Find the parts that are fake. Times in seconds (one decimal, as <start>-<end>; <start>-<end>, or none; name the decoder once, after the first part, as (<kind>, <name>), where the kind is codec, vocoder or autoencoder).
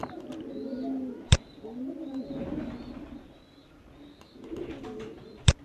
none